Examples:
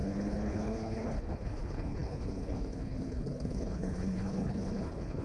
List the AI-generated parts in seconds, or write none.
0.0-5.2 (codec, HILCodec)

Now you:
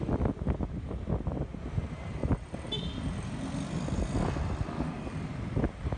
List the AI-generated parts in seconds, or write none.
none

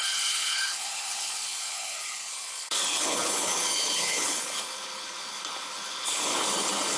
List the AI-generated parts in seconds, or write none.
0.0-7.0 (codec, HILCodec)

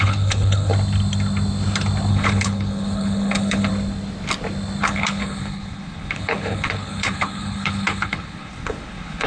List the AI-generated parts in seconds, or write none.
0.0-0.7 (codec, HILCodec); 2.1-3.7; 4.8-9.3

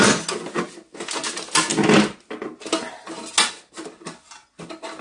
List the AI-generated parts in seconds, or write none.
none